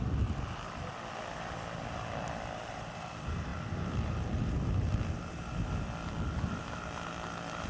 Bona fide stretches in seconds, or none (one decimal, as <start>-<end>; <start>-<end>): 0.0-7.7